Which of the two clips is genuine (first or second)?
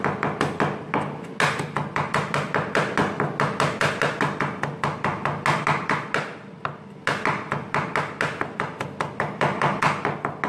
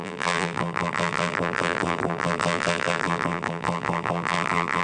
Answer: first